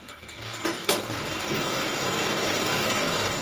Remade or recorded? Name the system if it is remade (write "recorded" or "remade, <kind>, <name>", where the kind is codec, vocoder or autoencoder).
remade, codec, DAC